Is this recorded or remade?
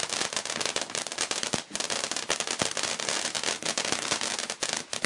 recorded